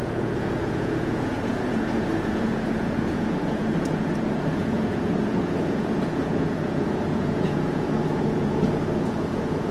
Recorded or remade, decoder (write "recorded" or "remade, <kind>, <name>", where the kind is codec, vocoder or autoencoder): remade, vocoder, Vocos